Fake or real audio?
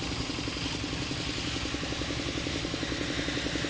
real